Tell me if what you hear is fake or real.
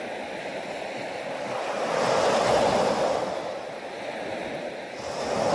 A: real